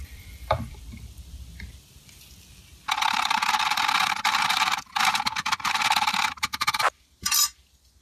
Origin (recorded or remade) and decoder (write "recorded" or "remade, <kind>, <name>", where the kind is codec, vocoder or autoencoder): remade, vocoder, BigVGAN v2